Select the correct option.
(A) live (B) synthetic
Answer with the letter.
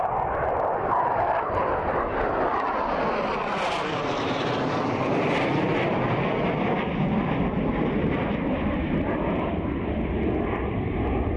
A